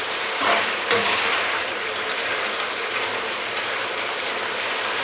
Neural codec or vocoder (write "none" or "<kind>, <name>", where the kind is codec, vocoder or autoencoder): vocoder, BigVGAN v2